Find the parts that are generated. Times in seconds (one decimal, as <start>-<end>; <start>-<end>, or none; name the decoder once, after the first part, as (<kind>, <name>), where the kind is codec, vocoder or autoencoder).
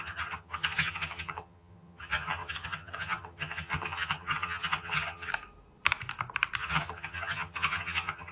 0.0-5.3 (vocoder, HiFi-GAN); 6.6-8.3